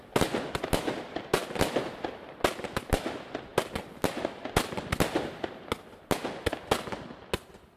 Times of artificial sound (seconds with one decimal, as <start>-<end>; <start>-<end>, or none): none